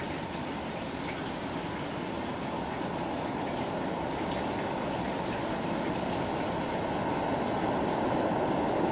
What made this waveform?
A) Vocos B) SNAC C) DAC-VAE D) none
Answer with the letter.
D